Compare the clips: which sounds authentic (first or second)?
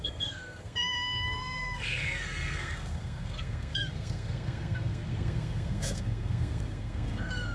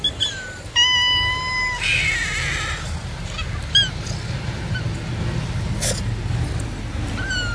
second